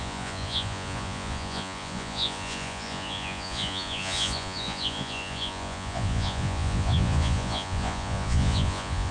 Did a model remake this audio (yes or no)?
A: yes